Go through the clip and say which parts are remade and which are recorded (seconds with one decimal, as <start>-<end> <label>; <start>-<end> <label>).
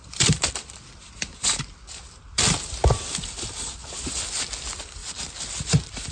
0.0-6.1 recorded